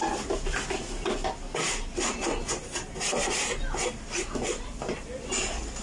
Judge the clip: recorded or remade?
recorded